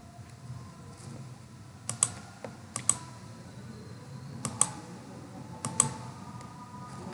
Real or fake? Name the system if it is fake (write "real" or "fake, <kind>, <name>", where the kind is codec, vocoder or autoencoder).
real